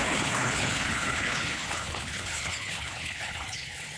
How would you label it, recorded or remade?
remade